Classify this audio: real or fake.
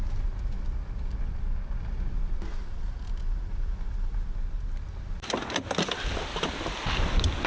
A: real